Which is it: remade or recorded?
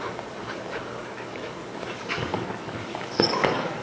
remade